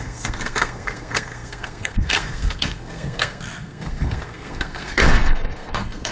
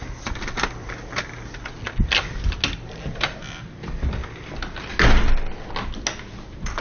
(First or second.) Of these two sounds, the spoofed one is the first